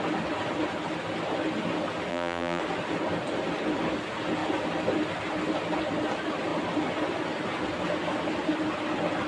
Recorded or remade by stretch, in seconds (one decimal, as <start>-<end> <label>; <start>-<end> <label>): 0.0-2.1 recorded; 2.1-2.6 remade; 2.6-9.3 recorded